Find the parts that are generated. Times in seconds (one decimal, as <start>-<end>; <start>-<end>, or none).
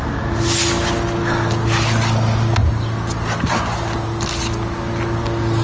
none